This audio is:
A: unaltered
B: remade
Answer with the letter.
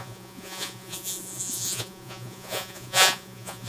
B